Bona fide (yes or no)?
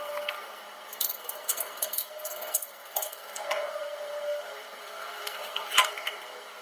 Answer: no